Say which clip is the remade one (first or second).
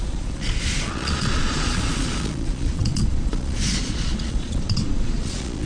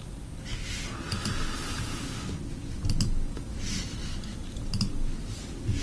first